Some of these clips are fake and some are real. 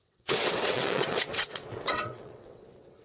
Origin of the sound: fake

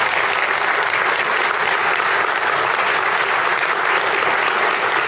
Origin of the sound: real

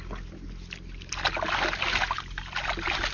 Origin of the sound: real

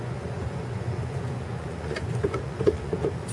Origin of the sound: fake